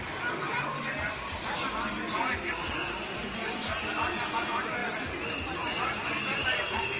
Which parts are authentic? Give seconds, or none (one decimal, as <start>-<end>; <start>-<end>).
0.0-7.0